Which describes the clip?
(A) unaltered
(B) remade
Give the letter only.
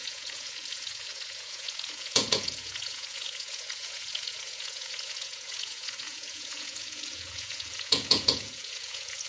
B